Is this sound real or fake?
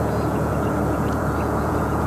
fake